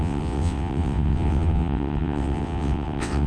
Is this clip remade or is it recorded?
remade